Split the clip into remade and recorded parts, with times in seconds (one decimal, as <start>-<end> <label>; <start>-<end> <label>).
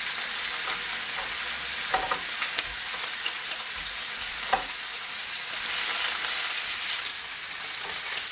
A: 0.0-2.7 recorded; 2.7-5.2 remade; 5.2-7.1 recorded; 7.1-8.3 remade